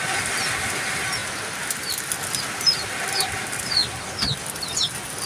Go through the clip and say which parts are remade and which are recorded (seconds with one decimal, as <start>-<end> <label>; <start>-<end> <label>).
0.0-5.3 recorded